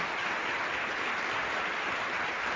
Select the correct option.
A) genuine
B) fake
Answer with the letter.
A